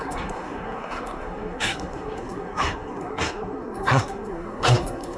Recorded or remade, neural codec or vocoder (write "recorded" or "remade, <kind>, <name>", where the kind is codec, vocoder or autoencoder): remade, codec, SNAC